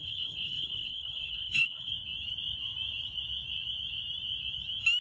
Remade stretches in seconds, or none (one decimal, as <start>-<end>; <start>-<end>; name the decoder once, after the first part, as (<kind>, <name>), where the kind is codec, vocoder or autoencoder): 0.0-1.9 (codec, HILCodec)